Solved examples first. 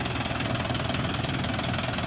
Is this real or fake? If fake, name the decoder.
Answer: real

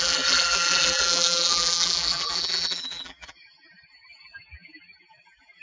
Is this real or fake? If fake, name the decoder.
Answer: fake, vocoder, BigVGAN v2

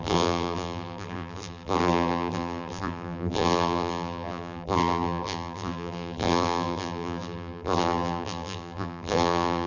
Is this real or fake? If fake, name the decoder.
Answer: fake, vocoder, BigVGAN v2